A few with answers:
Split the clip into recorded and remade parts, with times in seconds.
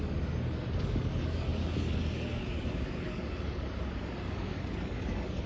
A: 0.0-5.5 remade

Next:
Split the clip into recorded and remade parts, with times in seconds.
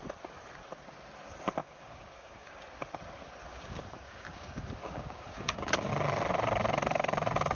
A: 0.0-1.6 recorded; 1.6-2.5 remade; 2.5-3.5 recorded; 3.5-5.9 remade; 5.9-7.5 recorded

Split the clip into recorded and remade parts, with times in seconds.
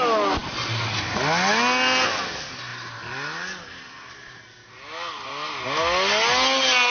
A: 0.0-6.9 recorded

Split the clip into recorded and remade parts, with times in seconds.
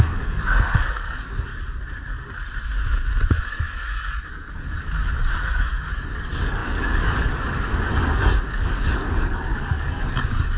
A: 0.0-1.5 remade; 1.5-3.4 recorded; 3.4-10.6 remade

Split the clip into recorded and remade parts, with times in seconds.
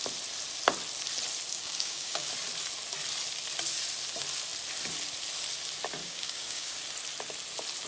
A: 0.0-1.5 recorded; 1.5-2.3 remade; 2.3-6.0 recorded; 6.0-6.8 remade; 6.8-7.9 recorded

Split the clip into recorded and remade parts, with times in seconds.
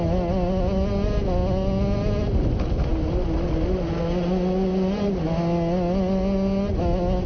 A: 0.0-7.3 recorded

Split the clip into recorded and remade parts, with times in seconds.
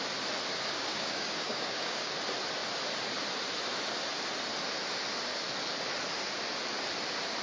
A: 0.0-0.5 recorded; 0.5-2.1 remade; 2.1-7.4 recorded